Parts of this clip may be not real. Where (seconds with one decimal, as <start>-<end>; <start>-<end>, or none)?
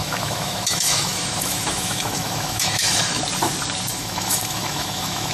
0.0-3.2; 3.9-5.3